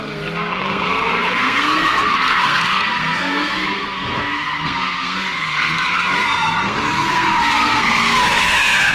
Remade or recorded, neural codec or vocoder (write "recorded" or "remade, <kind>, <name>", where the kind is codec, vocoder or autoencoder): remade, codec, SNAC